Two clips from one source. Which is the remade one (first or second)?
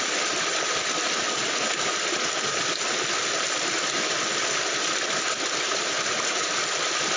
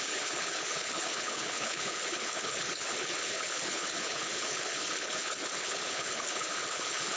second